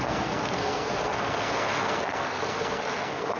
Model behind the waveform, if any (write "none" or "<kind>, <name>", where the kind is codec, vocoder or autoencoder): codec, SNAC